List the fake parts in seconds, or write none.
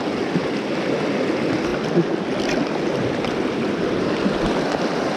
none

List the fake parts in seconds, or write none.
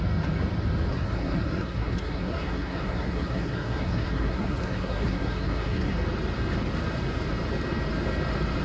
0.9-5.9 (codec, SNAC)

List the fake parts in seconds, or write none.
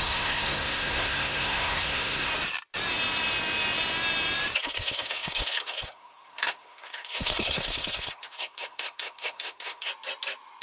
0.0-2.3 (codec, SNAC); 4.6-9.9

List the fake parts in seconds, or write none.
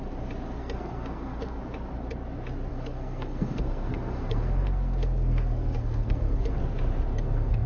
0.6-1.6 (codec, SNAC); 2.7-6.6; 7.1-7.7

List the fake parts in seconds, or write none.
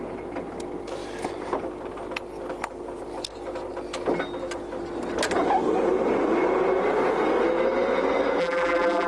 8.4-9.1 (vocoder, BigVGAN v2)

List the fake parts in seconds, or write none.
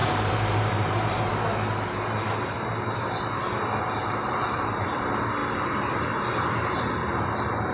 0.0-1.3 (vocoder, BigVGAN v2); 4.0-5.0; 5.4-6.8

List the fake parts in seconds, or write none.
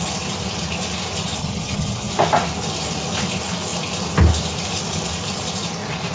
1.4-2.1 (vocoder, HiFi-GAN)